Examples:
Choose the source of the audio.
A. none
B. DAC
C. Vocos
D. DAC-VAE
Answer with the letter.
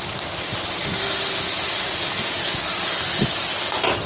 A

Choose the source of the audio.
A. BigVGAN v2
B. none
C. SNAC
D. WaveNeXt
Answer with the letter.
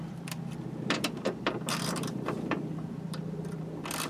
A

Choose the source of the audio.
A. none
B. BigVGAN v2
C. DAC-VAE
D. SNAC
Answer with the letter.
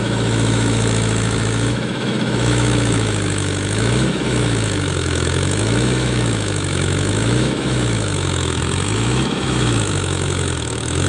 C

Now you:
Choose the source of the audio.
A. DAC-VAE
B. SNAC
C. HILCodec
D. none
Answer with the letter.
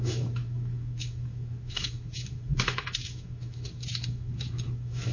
A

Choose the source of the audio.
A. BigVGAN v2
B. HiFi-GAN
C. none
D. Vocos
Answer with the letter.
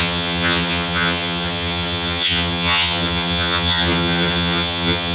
B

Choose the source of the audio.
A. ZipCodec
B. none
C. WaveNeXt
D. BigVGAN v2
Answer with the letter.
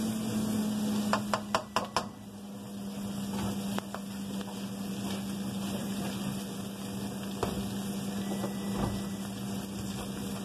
B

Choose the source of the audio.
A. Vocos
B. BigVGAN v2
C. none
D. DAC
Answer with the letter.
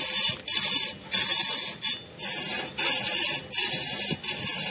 C